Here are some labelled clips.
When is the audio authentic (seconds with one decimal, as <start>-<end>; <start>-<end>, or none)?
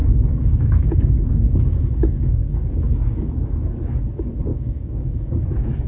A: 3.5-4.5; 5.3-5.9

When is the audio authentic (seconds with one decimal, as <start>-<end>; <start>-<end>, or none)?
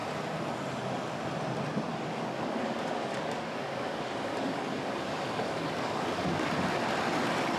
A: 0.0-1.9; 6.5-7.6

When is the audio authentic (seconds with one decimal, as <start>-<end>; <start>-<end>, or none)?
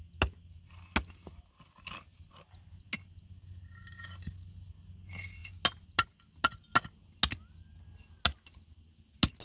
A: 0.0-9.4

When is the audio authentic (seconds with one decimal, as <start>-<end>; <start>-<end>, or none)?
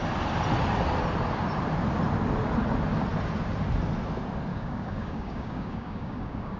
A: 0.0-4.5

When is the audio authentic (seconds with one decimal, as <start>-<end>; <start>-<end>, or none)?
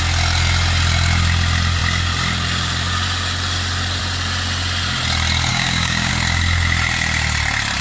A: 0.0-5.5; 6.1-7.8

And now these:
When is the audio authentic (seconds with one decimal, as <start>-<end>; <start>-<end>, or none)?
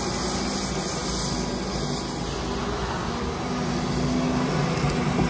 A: 0.0-5.3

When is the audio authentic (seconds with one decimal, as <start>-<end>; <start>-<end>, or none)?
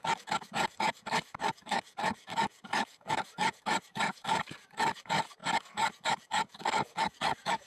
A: none